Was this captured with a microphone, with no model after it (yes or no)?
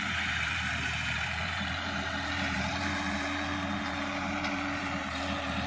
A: no